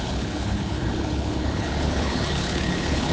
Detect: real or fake fake